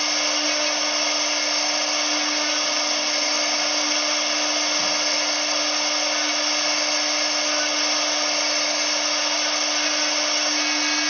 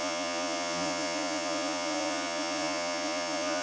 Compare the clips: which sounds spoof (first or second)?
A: second